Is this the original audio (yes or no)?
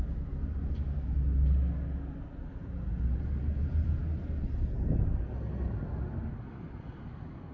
yes